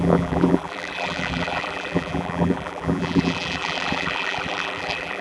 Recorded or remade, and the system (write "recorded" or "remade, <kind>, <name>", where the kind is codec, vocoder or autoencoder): remade, vocoder, BigVGAN v2